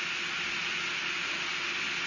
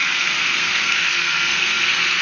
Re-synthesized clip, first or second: second